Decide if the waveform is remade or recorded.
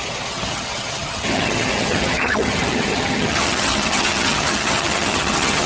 remade